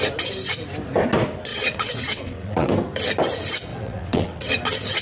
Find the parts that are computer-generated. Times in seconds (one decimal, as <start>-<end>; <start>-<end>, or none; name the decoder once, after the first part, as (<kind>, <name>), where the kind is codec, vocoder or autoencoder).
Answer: 1.5-2.7 (vocoder, WaveNeXt); 3.7-4.5